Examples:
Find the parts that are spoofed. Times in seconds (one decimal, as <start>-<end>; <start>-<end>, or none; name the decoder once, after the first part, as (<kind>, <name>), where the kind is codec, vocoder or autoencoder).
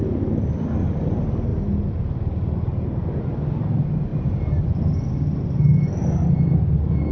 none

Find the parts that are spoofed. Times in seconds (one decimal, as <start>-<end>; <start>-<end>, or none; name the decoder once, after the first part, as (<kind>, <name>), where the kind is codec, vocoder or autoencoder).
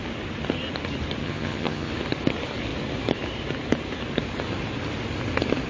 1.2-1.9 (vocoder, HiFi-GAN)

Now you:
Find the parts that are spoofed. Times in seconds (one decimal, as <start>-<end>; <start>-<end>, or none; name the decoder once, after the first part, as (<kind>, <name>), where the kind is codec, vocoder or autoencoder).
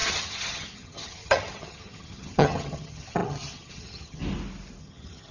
0.0-4.2 (vocoder, HiFi-GAN); 4.8-5.3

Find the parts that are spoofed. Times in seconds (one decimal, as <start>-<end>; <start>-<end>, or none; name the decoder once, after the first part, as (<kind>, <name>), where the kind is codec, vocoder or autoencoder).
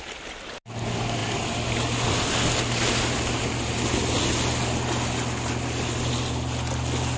none